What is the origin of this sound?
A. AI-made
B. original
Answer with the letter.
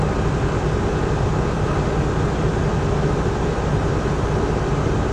B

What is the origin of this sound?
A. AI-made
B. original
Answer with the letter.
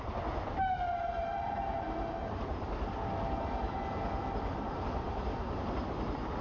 B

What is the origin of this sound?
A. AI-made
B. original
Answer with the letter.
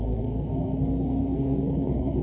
A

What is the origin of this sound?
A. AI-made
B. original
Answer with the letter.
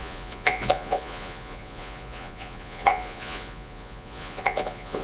A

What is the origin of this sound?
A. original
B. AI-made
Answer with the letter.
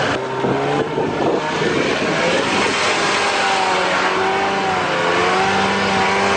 A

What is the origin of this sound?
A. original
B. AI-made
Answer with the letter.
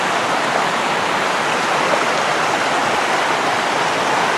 A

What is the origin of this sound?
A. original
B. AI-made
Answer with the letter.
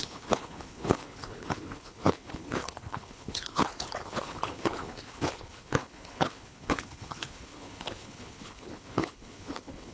B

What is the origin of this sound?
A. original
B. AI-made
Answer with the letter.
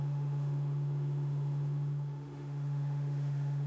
B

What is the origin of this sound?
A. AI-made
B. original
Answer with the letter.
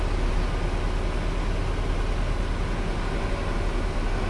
B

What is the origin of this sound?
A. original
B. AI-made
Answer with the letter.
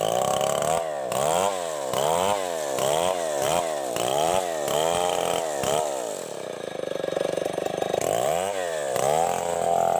A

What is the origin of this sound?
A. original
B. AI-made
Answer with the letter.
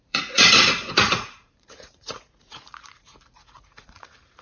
B